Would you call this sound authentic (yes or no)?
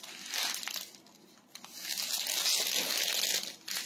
yes